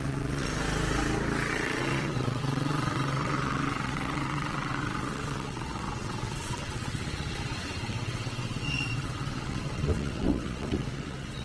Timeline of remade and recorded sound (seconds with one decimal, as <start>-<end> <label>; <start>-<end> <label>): 0.0-0.5 remade; 0.5-1.5 recorded; 1.5-11.4 remade